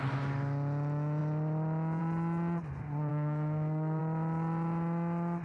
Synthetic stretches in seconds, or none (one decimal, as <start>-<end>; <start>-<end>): 3.1-4.0